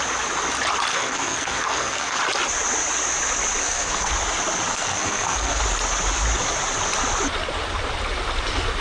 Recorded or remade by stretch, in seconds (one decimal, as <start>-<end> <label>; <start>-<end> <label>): 0.0-0.9 recorded; 0.9-2.2 remade; 2.2-3.6 recorded; 3.6-4.1 remade; 4.1-4.7 recorded; 4.7-5.6 remade; 5.6-8.8 recorded